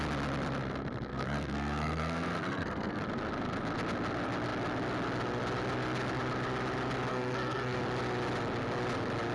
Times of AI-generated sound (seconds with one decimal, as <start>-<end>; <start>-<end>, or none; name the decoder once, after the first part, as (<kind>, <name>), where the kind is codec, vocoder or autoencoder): 1.1-3.0 (codec, SNAC); 7.1-7.8